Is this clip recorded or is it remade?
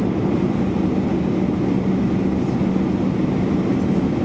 recorded